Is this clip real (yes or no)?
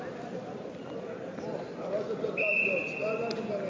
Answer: yes